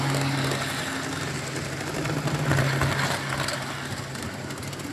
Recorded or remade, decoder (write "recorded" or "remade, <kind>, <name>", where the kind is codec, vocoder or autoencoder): recorded